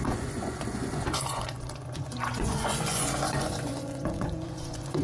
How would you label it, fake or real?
fake